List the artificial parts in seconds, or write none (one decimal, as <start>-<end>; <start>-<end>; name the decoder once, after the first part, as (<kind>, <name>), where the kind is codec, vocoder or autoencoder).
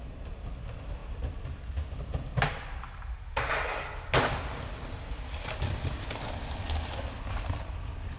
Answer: none